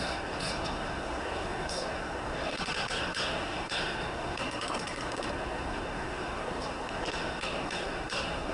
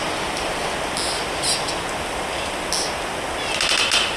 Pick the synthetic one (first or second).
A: first